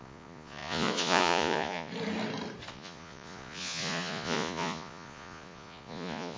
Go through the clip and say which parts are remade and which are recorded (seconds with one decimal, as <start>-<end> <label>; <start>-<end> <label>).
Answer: 0.0-1.9 remade; 1.9-2.7 recorded; 2.7-6.4 remade